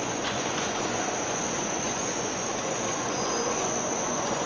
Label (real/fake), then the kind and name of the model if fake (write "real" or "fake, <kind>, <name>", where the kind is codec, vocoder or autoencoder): fake, vocoder, Vocos